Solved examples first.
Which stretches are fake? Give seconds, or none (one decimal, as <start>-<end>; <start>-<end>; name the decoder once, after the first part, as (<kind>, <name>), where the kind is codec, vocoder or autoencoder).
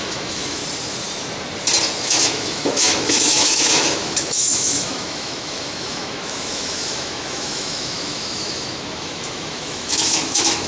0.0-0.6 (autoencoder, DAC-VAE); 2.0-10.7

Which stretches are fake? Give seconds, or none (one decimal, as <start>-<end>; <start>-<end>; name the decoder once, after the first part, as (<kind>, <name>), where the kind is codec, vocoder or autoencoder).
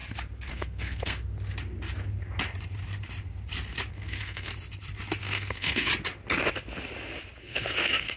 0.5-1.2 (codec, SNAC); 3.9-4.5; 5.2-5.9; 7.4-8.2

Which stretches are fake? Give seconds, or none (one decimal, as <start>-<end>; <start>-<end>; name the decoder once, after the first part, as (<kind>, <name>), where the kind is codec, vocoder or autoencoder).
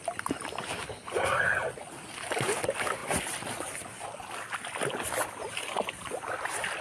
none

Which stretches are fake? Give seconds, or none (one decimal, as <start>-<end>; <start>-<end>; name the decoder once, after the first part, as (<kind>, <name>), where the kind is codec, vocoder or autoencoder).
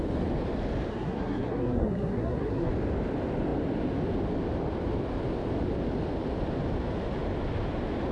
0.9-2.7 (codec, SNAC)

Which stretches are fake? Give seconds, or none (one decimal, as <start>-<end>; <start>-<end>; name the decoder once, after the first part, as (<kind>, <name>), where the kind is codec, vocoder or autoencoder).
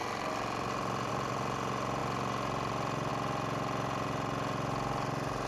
none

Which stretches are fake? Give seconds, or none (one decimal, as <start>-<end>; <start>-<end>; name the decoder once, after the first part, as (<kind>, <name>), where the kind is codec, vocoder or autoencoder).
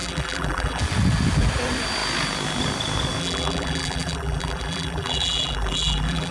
0.0-0.8 (vocoder, BigVGAN v2); 3.2-6.3